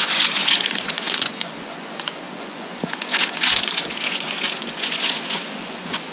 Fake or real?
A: fake